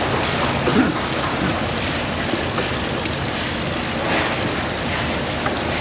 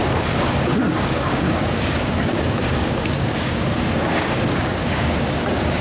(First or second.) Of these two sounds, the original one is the first